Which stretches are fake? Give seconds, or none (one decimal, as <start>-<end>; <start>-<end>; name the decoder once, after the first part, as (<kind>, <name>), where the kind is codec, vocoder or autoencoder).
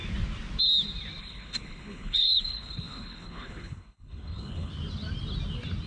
1.2-4.7 (codec, HILCodec)